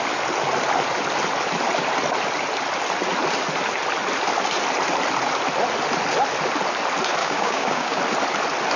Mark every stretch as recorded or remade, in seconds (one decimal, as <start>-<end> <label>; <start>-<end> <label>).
0.0-7.2 recorded; 7.2-8.0 remade; 8.0-8.8 recorded